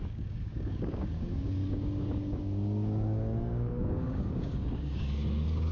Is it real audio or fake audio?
fake